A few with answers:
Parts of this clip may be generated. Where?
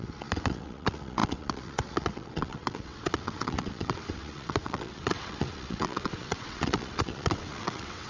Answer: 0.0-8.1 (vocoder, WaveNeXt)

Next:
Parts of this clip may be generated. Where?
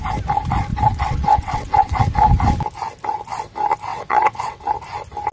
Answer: 0.7-2.0 (vocoder, WaveNeXt); 3.9-4.6